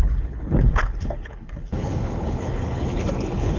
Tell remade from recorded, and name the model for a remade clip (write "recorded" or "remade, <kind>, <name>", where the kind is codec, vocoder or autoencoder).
remade, codec, HILCodec